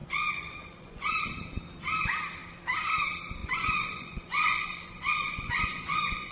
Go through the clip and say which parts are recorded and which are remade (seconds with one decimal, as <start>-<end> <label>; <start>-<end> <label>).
0.0-1.3 remade; 1.3-3.4 recorded; 3.4-6.3 remade